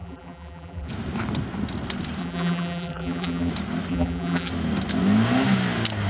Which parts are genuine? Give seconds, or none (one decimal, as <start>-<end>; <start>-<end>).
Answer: 0.9-2.2; 3.5-3.9; 4.5-6.1